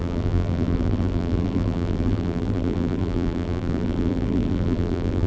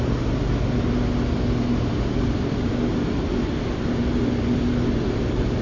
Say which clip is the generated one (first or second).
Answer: first